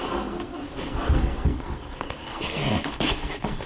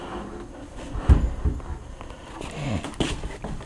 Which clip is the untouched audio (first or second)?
second